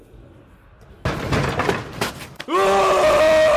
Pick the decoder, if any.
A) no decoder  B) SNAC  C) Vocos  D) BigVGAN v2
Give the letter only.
A